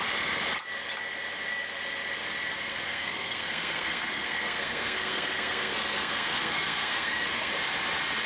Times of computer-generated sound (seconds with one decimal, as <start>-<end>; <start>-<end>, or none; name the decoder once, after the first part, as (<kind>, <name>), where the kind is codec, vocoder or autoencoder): 2.7-7.5 (codec, SNAC)